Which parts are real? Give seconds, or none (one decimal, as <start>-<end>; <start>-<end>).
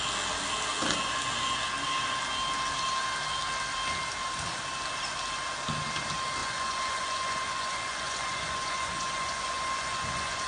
0.0-6.4